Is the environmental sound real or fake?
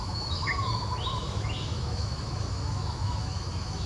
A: fake